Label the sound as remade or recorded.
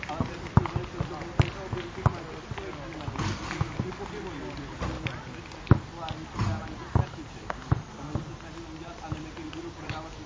recorded